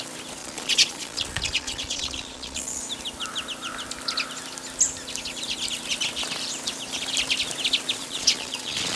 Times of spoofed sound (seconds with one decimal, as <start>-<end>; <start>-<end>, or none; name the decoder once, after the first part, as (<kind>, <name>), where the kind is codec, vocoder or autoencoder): 0.4-2.8 (vocoder, Vocos); 8.0-9.0